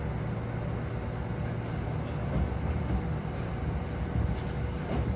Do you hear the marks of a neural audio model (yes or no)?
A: no